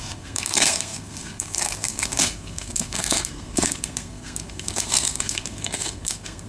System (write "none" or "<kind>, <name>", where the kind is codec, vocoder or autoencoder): codec, SNAC